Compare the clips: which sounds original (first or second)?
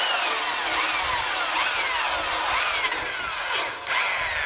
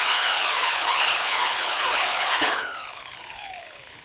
first